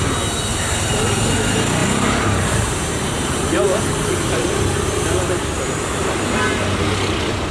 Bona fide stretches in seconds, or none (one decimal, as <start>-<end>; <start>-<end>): 0.0-0.5; 1.0-1.8; 4.5-7.5